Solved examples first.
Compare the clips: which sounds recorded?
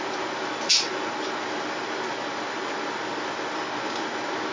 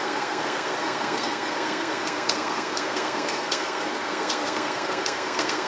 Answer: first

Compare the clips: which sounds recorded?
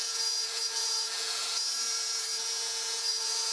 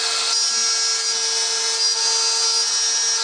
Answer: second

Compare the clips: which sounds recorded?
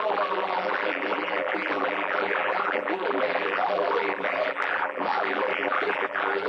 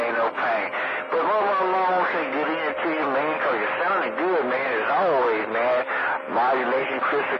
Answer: second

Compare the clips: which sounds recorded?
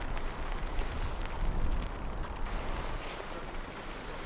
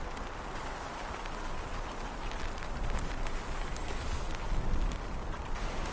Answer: second